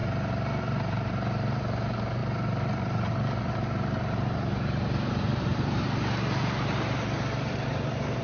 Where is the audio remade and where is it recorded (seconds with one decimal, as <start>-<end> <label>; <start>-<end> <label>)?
0.0-0.6 recorded; 0.6-8.2 remade